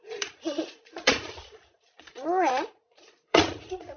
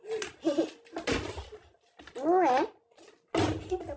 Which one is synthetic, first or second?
first